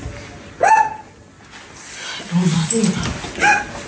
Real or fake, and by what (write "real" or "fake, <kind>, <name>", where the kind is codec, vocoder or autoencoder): real